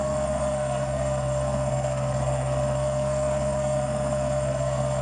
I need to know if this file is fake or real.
fake